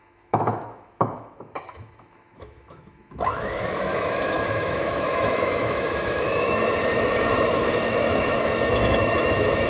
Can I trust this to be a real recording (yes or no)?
no